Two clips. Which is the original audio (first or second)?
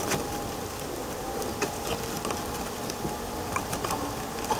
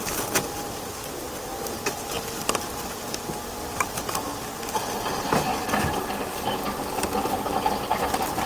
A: second